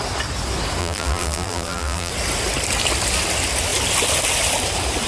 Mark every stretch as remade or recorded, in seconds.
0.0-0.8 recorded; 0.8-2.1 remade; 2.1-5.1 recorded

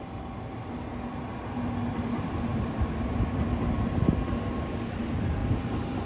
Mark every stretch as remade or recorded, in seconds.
0.0-6.0 recorded

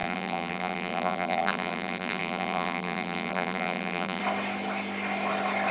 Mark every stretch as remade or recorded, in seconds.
0.0-4.2 remade; 4.2-5.7 recorded

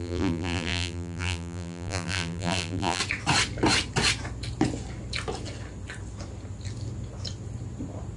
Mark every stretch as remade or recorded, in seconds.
0.0-3.0 remade; 3.0-8.2 recorded

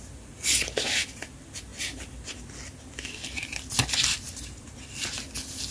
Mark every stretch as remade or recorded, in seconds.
0.0-5.7 recorded

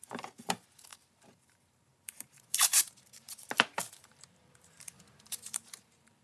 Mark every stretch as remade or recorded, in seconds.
0.0-6.2 remade

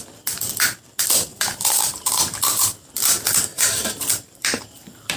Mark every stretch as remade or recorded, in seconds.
0.0-1.3 recorded; 1.3-2.1 remade; 2.1-3.5 recorded; 3.5-4.6 remade; 4.6-5.2 recorded

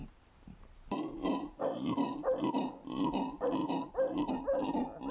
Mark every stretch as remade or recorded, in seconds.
0.0-3.0 remade; 3.0-3.6 recorded; 3.6-4.3 remade; 4.3-5.1 recorded